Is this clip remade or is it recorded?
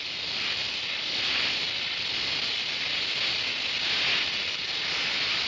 recorded